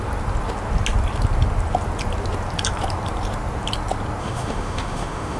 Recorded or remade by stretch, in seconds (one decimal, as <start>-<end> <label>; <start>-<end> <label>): 0.0-4.2 recorded; 4.2-5.4 remade